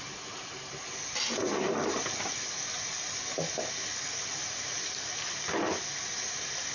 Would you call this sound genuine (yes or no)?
yes